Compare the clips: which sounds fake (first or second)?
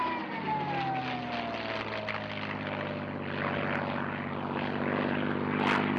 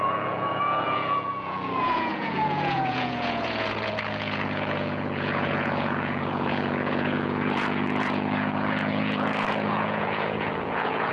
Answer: second